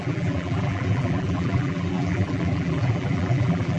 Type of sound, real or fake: fake